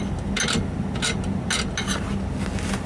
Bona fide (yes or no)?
yes